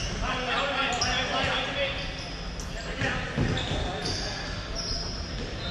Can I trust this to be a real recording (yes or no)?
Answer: yes